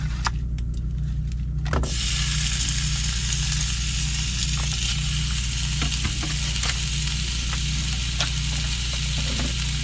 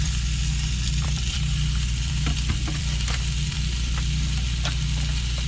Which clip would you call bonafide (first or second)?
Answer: first